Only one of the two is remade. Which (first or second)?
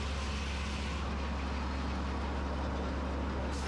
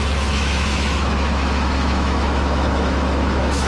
second